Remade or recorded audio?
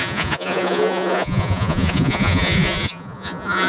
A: remade